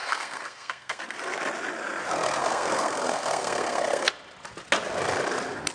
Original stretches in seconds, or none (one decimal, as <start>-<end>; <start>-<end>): 1.0-2.4; 4.1-5.7